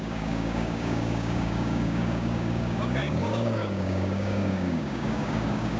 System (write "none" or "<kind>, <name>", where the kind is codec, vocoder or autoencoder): codec, DAC